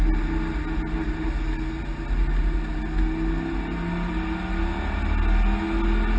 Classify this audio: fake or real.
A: real